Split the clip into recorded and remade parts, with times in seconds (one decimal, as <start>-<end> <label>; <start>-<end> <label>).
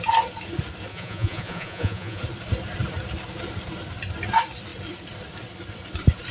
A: 0.0-0.9 recorded; 0.9-2.2 remade; 2.2-6.3 recorded